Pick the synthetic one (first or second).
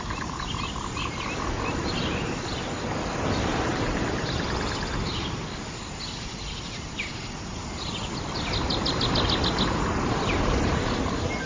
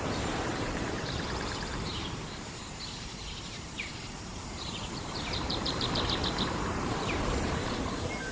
second